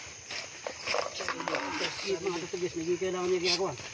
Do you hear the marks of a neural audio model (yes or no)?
no